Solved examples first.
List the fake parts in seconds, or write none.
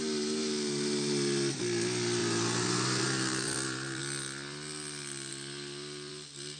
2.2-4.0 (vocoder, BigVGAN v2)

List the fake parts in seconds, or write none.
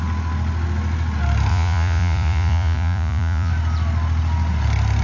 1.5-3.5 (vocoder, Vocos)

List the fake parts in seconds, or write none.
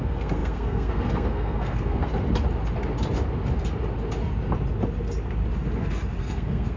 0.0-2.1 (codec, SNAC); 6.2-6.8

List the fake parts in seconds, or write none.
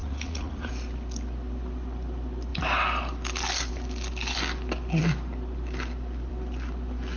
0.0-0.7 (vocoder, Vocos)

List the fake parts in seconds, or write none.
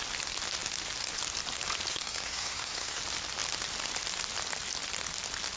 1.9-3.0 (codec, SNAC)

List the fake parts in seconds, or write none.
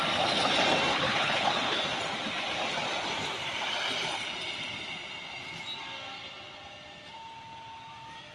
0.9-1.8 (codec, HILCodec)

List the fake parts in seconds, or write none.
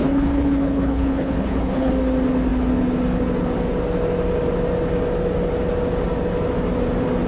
0.0-1.9 (codec, HILCodec)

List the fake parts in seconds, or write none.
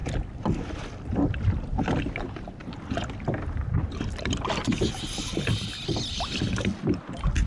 none